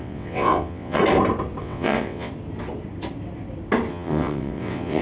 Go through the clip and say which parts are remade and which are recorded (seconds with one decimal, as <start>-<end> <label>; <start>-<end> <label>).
0.0-1.0 remade; 1.0-1.6 recorded; 1.6-2.3 remade; 2.3-3.9 recorded; 3.9-5.0 remade